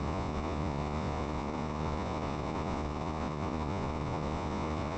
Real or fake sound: fake